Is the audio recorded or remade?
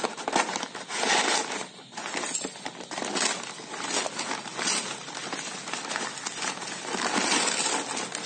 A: recorded